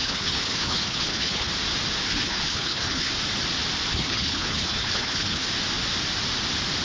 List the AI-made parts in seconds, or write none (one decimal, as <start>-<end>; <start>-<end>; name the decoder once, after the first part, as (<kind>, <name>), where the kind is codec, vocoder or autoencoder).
0.0-1.5 (codec, HILCodec); 2.1-3.1; 3.9-5.5